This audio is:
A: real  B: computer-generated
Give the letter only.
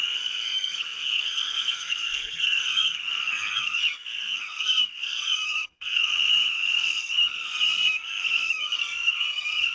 B